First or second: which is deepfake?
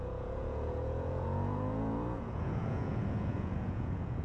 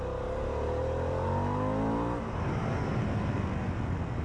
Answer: first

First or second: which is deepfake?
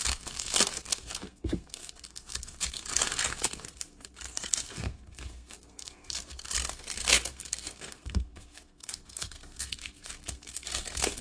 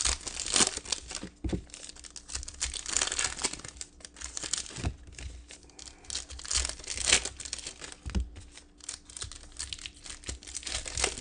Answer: first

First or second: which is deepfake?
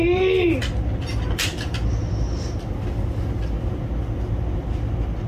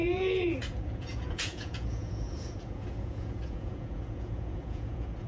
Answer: second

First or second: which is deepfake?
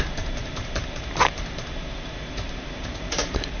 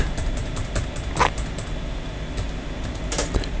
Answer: first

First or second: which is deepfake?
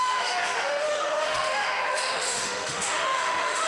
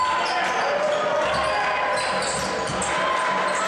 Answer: first